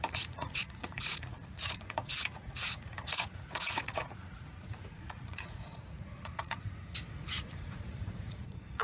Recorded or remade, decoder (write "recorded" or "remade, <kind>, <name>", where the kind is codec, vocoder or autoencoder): remade, vocoder, Vocos